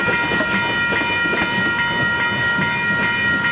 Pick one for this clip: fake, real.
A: real